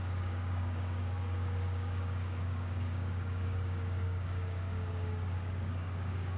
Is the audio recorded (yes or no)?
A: no